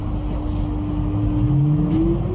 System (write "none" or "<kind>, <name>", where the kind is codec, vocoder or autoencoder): none